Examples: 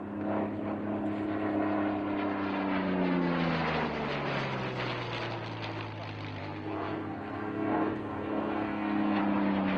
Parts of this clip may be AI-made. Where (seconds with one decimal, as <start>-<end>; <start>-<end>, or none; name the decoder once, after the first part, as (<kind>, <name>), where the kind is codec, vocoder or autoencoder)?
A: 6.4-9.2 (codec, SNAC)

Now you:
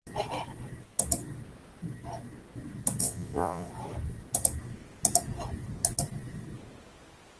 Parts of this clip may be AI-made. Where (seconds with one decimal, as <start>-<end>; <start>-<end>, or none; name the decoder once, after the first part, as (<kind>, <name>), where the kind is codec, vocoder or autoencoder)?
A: 3.0-3.7 (vocoder, Vocos)

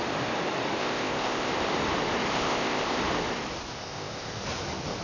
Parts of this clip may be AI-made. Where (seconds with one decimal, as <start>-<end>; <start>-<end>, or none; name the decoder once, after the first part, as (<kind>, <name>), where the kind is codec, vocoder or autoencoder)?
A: 0.8-1.5 (codec, ZipCodec); 2.3-3.0; 3.7-4.4

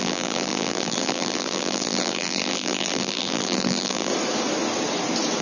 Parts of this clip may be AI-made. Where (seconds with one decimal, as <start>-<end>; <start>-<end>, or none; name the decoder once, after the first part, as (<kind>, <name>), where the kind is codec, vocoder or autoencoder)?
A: 0.0-4.1 (vocoder, BigVGAN v2)

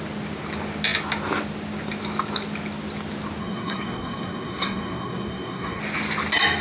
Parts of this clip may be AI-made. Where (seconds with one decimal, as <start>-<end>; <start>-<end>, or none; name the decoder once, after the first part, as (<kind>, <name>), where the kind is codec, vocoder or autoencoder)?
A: 3.4-5.8 (codec, SNAC)

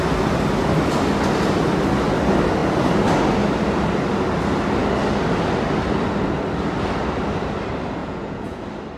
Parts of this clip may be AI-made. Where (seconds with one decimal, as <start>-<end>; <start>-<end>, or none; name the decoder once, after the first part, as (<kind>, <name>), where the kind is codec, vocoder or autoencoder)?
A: 8.0-8.6 (vocoder, Vocos)